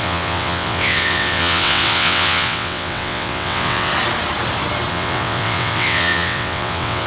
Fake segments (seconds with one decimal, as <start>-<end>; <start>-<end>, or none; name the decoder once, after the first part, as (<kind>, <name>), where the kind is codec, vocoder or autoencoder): 0.0-3.9 (vocoder, WaveNeXt); 4.9-7.1